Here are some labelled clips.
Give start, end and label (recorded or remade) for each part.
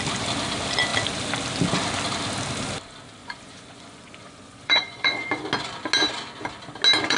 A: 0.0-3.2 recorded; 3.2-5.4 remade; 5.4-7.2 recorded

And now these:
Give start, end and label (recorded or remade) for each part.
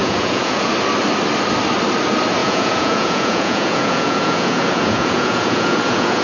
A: 0.0-0.7 remade; 0.7-2.4 recorded; 2.4-6.2 remade